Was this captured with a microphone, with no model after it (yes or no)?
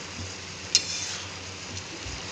yes